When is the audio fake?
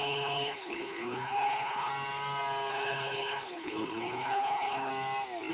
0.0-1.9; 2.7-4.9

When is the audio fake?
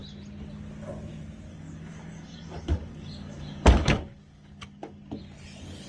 1.5-5.0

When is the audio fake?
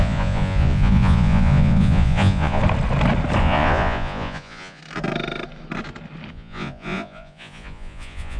0.0-2.6; 3.4-4.8; 6.3-8.4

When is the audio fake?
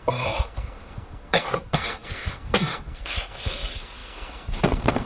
0.0-5.1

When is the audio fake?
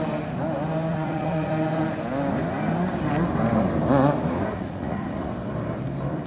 0.9-1.5; 4.5-5.3